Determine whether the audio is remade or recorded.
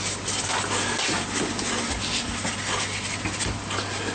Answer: recorded